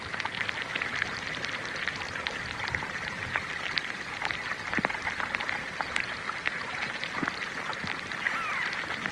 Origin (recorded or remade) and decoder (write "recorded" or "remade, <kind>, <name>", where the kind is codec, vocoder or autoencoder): recorded